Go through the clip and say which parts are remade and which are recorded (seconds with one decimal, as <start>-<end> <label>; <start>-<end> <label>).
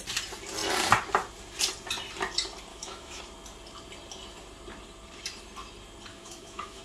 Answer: 0.0-2.7 recorded; 2.7-3.2 remade; 3.2-6.1 recorded; 6.1-6.8 remade